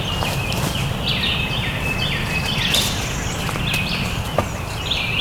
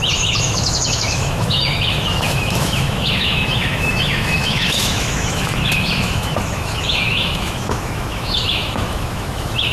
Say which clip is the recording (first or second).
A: first